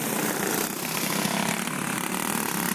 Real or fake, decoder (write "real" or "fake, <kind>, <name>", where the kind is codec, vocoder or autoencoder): real